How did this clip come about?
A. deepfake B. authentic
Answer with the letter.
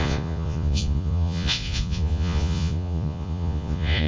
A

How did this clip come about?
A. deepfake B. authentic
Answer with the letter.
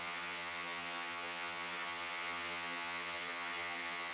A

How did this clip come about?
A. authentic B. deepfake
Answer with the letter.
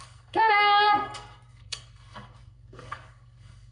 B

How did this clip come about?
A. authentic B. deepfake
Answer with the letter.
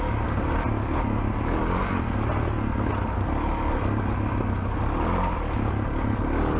A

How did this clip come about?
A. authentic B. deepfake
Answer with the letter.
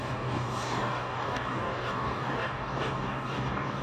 B